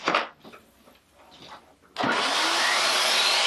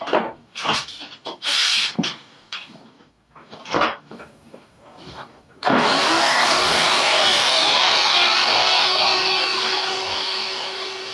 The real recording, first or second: first